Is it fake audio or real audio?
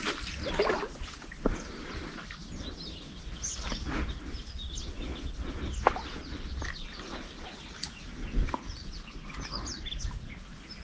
real